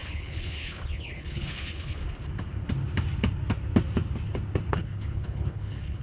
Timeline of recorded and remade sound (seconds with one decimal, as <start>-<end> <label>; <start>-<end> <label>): 0.0-2.0 remade; 2.0-4.7 recorded; 4.7-6.0 remade